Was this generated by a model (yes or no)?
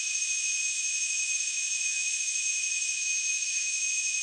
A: yes